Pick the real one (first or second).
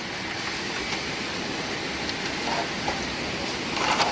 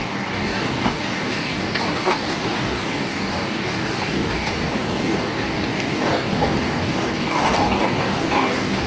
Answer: first